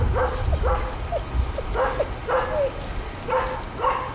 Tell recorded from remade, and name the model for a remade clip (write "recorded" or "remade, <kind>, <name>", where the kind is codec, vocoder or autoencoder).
recorded